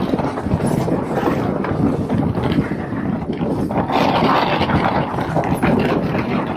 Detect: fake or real real